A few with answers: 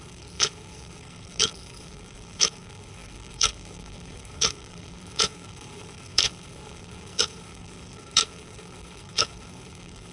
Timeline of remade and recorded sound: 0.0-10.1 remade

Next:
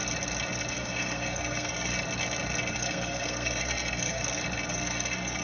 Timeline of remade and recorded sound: 0.0-0.7 recorded; 0.7-1.9 remade; 1.9-2.7 recorded; 2.7-4.2 remade; 4.2-4.7 recorded; 4.7-5.4 remade

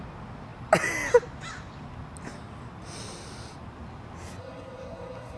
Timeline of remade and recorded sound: 0.0-4.4 recorded; 4.4-5.4 remade

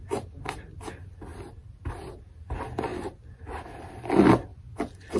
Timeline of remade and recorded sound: 0.0-5.2 recorded

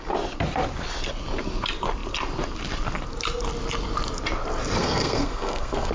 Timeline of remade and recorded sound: 0.0-4.8 recorded; 4.8-5.9 remade